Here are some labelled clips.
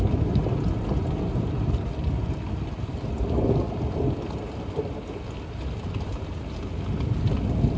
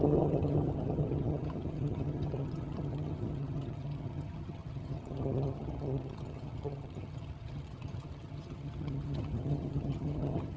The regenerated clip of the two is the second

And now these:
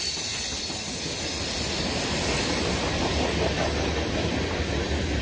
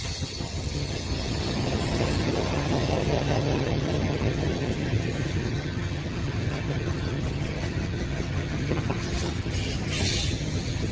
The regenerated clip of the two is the second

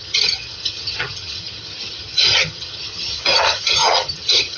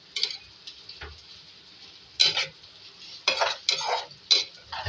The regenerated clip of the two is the first